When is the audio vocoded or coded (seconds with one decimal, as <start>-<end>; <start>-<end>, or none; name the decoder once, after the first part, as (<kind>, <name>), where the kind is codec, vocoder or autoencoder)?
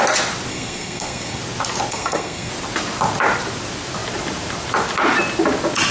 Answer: 0.5-1.4 (codec, SNAC); 1.9-2.5